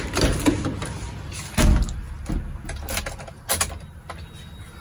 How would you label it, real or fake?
real